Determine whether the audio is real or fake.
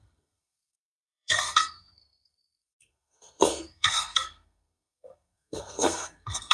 fake